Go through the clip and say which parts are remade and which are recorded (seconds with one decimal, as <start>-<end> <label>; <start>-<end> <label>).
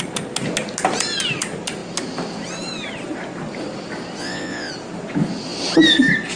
0.0-4.2 recorded; 4.2-4.7 remade; 4.7-6.4 recorded